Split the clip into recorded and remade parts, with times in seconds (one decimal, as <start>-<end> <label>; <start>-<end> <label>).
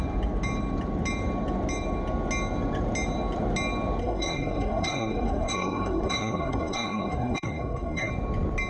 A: 0.0-4.0 recorded; 4.0-8.1 remade; 8.1-8.7 recorded